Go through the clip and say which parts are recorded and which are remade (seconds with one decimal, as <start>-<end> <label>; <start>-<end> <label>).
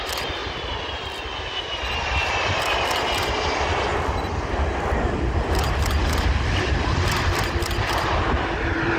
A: 0.0-9.0 recorded